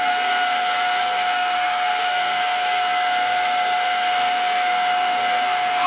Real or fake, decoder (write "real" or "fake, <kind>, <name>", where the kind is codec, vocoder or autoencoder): fake, codec, SNAC